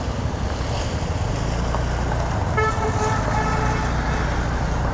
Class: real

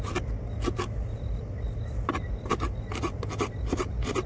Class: real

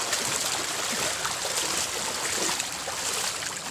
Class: real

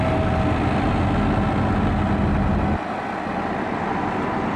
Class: real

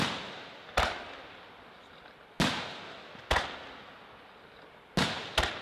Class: real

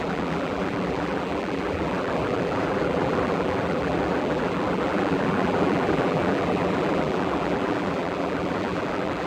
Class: fake